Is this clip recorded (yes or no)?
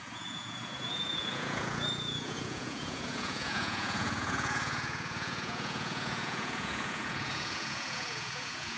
no